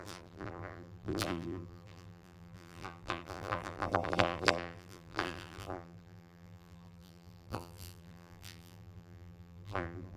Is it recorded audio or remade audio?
remade